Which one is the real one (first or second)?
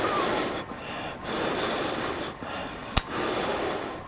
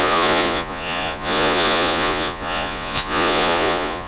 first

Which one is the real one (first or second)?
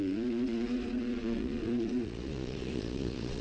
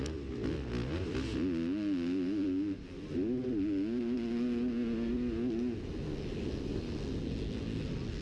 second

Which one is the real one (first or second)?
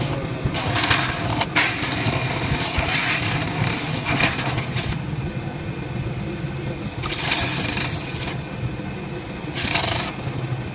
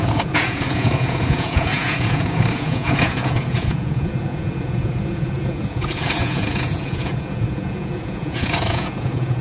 first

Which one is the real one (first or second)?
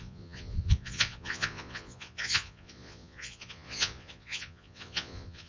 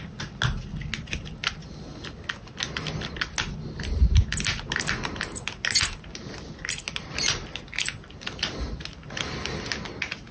second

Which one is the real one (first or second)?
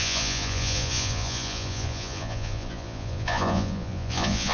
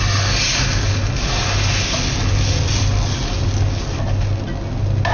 second